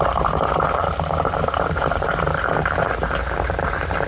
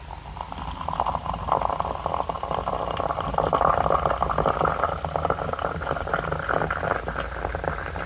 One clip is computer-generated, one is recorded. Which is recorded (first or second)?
second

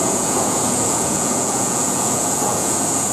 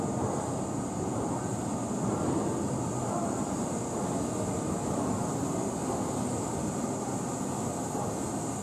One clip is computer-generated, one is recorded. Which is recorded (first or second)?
second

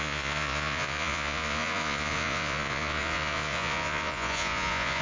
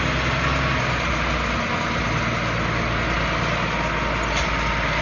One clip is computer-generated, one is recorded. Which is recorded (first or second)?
second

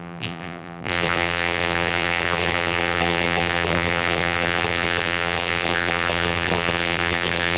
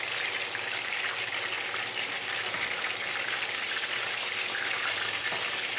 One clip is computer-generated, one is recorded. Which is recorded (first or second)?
second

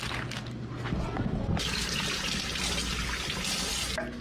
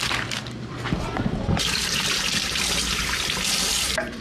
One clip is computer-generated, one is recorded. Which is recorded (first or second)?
first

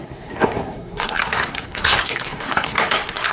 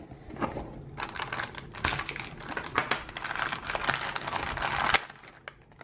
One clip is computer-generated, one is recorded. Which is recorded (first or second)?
second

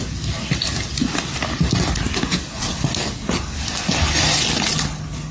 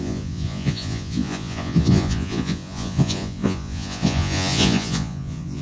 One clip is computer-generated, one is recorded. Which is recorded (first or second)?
first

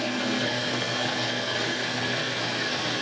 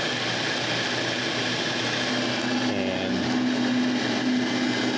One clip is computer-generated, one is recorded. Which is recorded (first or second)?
second